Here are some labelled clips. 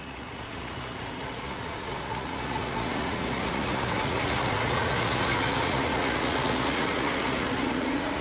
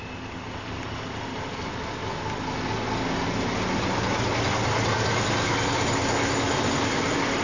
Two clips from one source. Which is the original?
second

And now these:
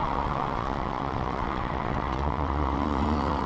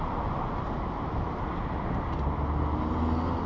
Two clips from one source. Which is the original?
second